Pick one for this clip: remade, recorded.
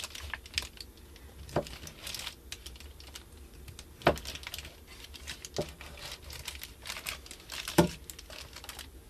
recorded